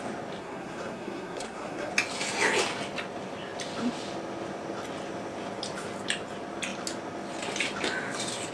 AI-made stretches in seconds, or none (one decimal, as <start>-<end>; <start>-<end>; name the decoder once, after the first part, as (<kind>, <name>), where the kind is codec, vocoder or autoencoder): 0.4-1.9 (codec, SNAC)